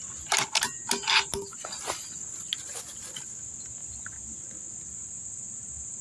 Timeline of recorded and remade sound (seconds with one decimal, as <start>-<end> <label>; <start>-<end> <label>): 0.0-3.8 recorded; 3.8-6.0 remade